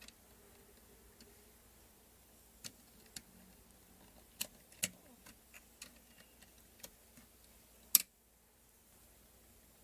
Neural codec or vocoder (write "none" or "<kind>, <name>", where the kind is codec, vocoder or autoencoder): none